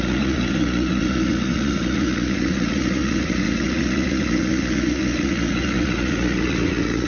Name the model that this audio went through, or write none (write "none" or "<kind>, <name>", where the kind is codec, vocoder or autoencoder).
vocoder, Vocos